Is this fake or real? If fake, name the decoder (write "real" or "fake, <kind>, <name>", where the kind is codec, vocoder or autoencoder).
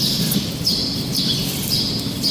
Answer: fake, vocoder, BigVGAN v2